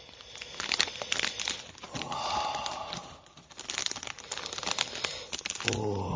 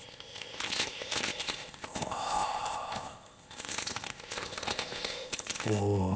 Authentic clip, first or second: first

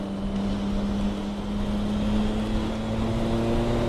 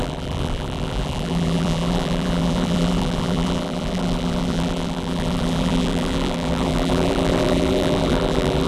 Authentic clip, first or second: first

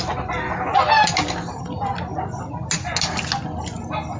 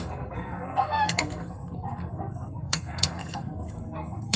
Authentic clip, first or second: first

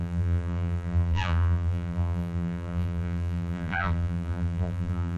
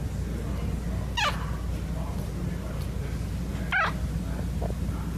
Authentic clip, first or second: second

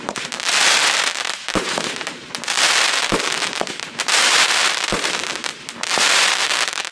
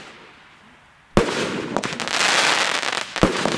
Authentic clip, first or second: second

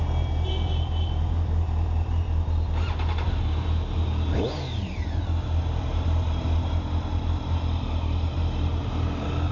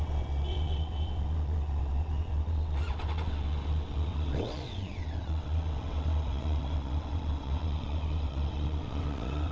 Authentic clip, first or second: first